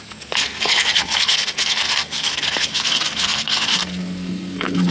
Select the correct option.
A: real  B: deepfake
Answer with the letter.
B